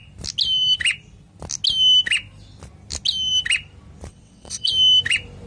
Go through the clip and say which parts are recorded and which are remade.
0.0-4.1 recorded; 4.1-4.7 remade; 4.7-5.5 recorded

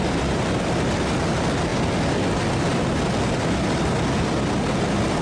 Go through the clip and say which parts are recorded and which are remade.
0.0-5.2 recorded

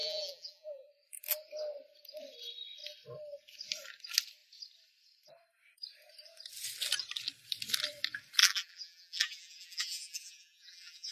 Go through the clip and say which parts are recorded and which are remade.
0.0-0.9 remade; 0.9-8.4 recorded; 8.4-11.1 remade

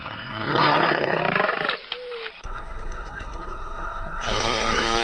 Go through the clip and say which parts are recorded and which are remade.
0.0-1.2 remade; 1.2-2.3 recorded; 2.3-5.0 remade

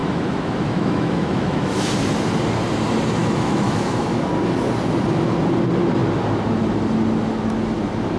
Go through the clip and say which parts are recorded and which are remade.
0.0-1.9 remade; 1.9-3.2 recorded; 3.2-4.2 remade; 4.2-8.2 recorded

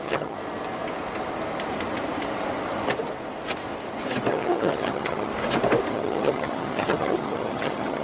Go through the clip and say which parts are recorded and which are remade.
0.0-0.4 remade; 0.4-4.3 recorded; 4.3-5.3 remade; 5.3-5.9 recorded; 5.9-8.0 remade

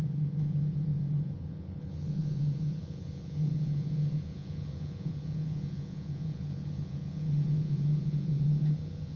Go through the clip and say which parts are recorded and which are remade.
0.0-9.2 remade